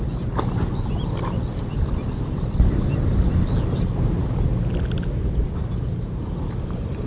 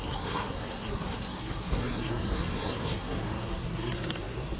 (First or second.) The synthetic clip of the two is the second